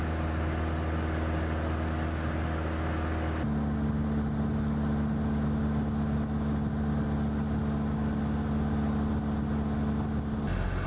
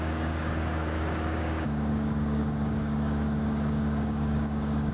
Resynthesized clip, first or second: second